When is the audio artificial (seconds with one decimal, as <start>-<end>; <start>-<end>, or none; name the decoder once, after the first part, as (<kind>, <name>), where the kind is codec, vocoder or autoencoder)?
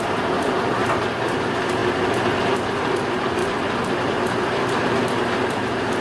0.0-0.8 (vocoder, BigVGAN v2); 1.4-1.8; 2.7-3.4; 4.9-6.0